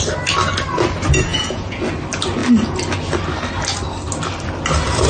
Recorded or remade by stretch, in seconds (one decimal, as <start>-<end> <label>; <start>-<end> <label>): 0.0-1.3 recorded; 1.3-1.8 remade; 1.8-5.1 recorded